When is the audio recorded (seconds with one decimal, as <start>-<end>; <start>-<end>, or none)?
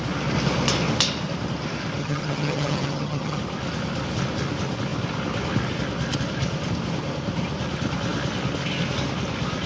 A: 0.0-2.0; 3.4-9.7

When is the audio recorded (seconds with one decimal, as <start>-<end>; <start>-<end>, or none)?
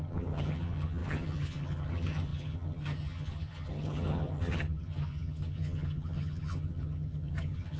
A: none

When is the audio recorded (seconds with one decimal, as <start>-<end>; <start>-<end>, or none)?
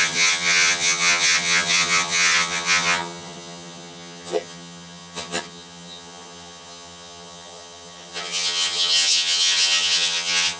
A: none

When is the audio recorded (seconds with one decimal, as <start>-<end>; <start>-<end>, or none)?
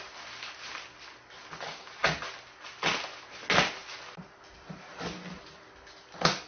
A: 0.0-6.5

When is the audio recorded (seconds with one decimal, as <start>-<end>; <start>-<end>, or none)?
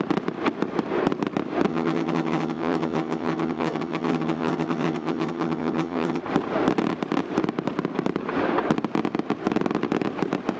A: 0.0-1.7; 6.2-10.6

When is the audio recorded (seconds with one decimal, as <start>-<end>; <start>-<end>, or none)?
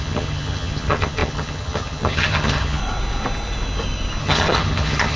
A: 2.8-4.2